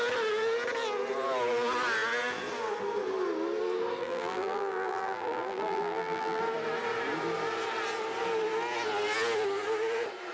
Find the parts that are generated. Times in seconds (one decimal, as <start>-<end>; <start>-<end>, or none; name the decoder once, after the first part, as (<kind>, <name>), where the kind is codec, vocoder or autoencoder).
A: 4.0-6.4 (vocoder, BigVGAN v2)